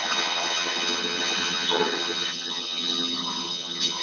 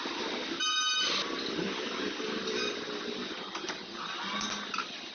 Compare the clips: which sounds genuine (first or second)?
second